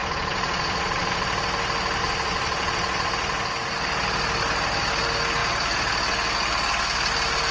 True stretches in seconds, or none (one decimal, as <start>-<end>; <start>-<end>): 1.2-2.0; 3.1-7.5